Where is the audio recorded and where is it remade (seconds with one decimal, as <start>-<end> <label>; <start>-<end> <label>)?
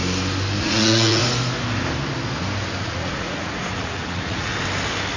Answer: 0.0-0.6 recorded; 0.6-1.2 remade; 1.2-2.8 recorded; 2.8-4.5 remade; 4.5-5.2 recorded